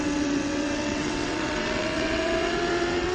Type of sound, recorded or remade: remade